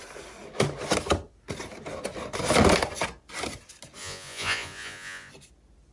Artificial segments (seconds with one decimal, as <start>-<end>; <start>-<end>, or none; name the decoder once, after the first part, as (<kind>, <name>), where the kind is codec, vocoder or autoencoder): 4.0-5.3 (vocoder, Vocos)